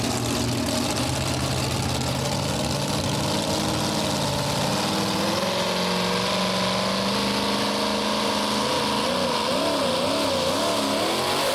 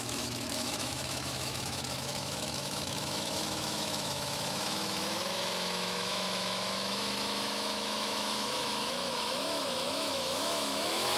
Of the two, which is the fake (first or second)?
second